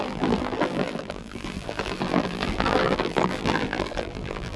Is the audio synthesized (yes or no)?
yes